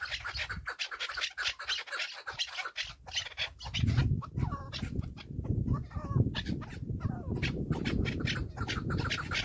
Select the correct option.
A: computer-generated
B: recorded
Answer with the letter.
B